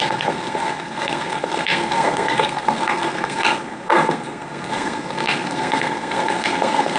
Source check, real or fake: fake